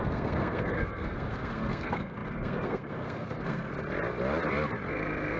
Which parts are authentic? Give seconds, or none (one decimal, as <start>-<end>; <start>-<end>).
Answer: 3.7-4.9